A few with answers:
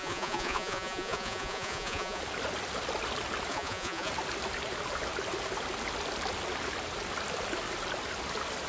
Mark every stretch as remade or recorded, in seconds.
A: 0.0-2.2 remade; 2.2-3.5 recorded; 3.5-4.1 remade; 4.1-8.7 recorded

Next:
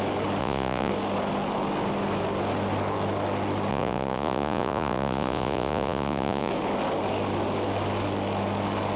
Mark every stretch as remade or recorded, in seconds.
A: 0.0-0.4 recorded; 0.4-0.9 remade; 0.9-3.7 recorded; 3.7-6.5 remade; 6.5-9.0 recorded

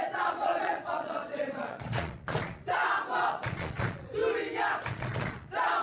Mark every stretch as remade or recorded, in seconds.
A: 0.0-2.8 remade; 2.8-3.3 recorded; 3.3-4.2 remade; 4.2-4.9 recorded; 4.9-5.8 remade

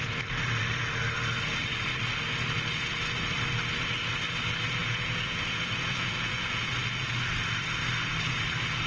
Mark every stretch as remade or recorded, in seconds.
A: 0.0-4.8 recorded; 4.8-6.7 remade; 6.7-8.9 recorded

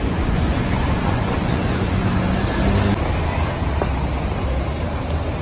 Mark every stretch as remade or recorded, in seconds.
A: 0.0-2.0 remade; 2.0-5.4 recorded

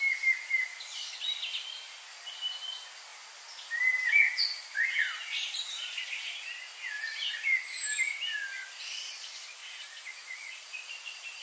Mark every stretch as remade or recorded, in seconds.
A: 0.0-9.6 recorded; 9.6-10.8 remade; 10.8-11.4 recorded

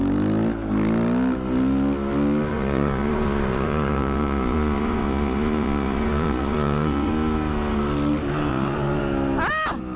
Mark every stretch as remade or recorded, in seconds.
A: 0.0-2.5 recorded; 2.5-7.1 remade; 7.1-8.5 recorded; 8.5-9.0 remade; 9.0-10.0 recorded